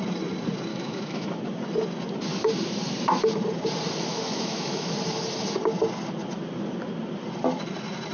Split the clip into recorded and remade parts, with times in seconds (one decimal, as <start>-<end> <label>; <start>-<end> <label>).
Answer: 0.0-0.7 recorded; 0.7-1.4 remade; 1.4-4.1 recorded; 4.1-4.9 remade; 4.9-8.1 recorded